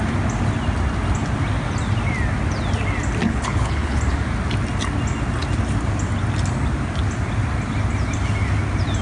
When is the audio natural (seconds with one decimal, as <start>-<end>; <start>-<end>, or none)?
0.0-3.2; 4.0-9.0